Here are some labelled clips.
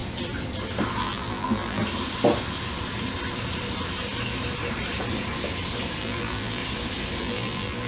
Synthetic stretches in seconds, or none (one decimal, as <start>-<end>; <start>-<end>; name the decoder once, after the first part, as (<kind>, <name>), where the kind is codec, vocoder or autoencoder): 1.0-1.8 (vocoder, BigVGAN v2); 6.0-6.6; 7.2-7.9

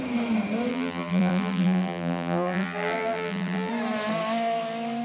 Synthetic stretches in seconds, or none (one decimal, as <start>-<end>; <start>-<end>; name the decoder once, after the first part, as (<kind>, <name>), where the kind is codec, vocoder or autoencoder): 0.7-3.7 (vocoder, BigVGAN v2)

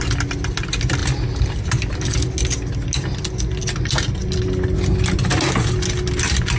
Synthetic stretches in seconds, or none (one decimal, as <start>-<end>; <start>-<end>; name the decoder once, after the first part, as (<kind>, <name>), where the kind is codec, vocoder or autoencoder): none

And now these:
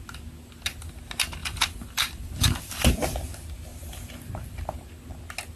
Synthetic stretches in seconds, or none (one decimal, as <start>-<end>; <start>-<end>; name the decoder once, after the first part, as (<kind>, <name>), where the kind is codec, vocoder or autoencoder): 1.4-2.9 (vocoder, BigVGAN v2); 3.7-4.9

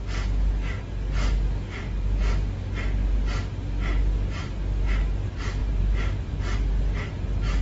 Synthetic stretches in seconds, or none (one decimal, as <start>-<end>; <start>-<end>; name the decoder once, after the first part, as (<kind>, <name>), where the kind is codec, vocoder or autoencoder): 5.6-6.3 (vocoder, BigVGAN v2)